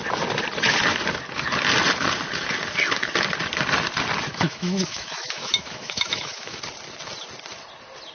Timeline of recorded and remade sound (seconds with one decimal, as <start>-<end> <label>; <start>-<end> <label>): 0.0-4.3 recorded; 4.3-6.6 remade; 6.6-8.1 recorded

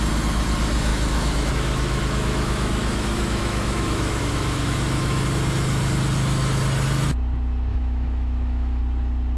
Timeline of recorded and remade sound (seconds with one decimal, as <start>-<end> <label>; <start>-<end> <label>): 0.0-0.9 recorded; 0.9-5.2 remade; 5.2-7.7 recorded; 7.7-8.8 remade; 8.8-9.4 recorded